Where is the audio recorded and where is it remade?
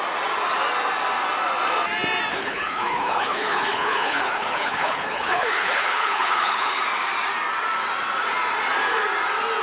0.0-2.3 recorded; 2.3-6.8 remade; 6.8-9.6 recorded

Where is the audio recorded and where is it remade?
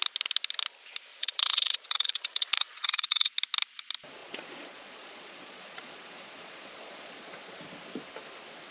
0.0-1.1 recorded; 1.1-3.3 remade; 3.3-4.2 recorded; 4.2-7.6 remade; 7.6-8.7 recorded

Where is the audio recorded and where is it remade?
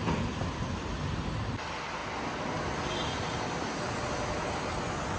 0.0-5.2 recorded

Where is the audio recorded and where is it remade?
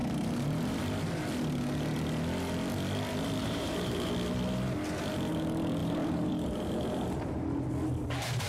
0.0-0.8 remade; 0.8-3.4 recorded; 3.4-4.1 remade; 4.1-5.8 recorded; 5.8-6.3 remade; 6.3-8.5 recorded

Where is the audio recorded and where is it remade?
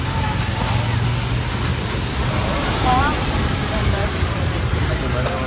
0.0-1.7 recorded; 1.7-5.0 remade; 5.0-5.5 recorded